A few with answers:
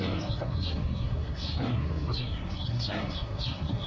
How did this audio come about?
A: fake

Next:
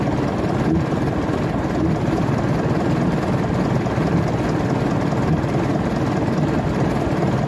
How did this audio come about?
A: real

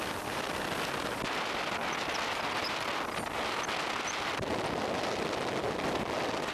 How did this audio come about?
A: real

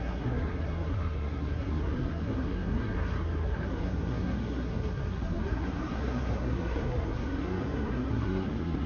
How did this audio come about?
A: fake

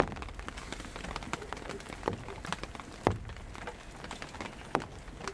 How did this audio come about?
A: real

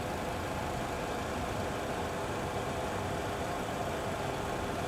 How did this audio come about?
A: real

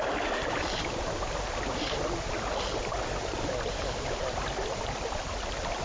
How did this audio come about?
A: real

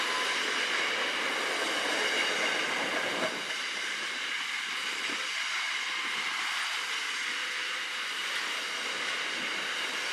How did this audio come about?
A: real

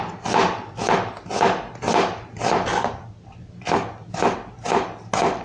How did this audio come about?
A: real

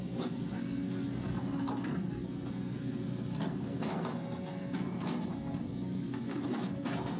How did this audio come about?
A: fake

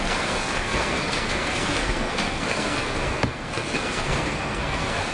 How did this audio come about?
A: fake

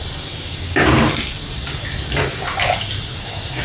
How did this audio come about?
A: real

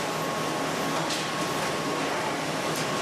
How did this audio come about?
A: real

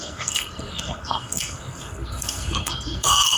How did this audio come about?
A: fake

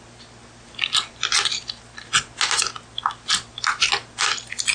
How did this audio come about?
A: real